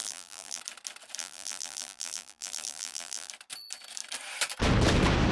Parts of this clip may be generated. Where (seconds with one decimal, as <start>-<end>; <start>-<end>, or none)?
0.0-0.6; 1.2-3.3

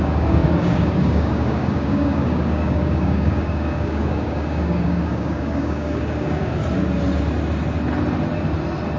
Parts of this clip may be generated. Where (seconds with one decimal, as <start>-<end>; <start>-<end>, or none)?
0.0-6.6

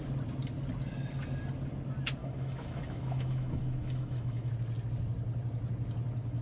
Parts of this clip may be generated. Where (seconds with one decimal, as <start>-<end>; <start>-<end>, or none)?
2.2-4.5

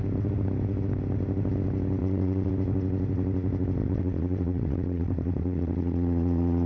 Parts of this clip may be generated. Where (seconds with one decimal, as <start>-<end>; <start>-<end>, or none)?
2.0-2.5; 3.8-6.7

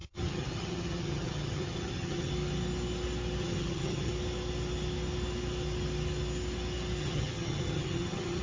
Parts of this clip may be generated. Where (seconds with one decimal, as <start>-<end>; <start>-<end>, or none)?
0.0-2.3; 3.4-4.1; 7.0-8.4